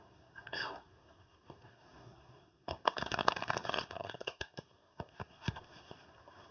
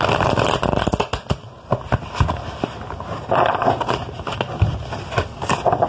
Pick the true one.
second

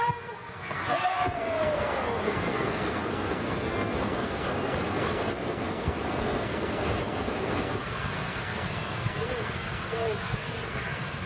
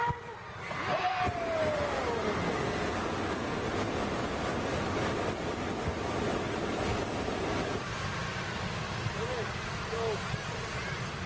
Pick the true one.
second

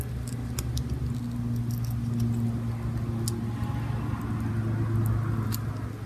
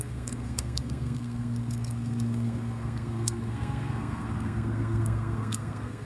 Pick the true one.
first